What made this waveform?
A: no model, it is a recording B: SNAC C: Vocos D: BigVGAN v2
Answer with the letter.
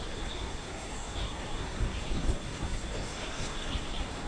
B